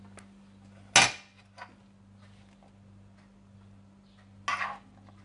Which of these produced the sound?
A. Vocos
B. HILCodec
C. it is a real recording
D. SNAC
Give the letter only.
C